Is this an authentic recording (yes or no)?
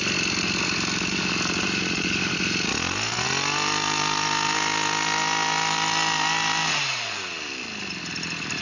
yes